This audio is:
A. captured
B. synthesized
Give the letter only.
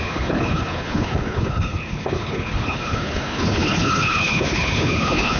B